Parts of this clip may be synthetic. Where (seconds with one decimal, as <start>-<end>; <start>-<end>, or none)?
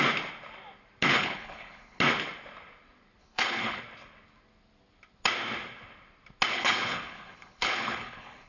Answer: 1.1-2.0; 3.2-3.8; 6.5-8.5